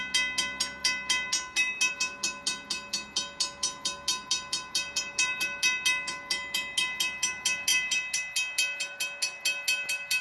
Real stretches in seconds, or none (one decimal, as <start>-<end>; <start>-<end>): 0.0-10.2